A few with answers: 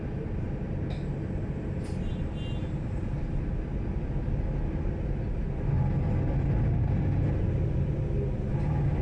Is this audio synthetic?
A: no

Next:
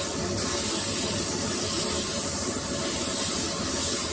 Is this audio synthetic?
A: no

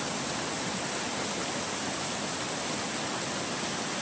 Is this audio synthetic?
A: no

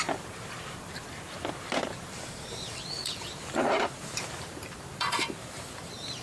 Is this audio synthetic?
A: yes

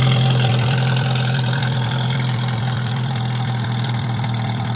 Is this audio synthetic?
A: yes